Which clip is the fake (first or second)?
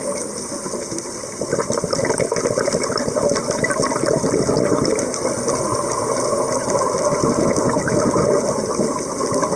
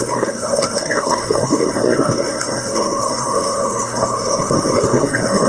second